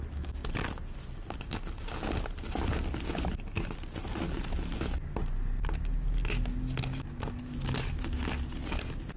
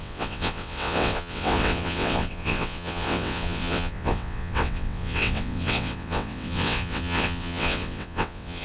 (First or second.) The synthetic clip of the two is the second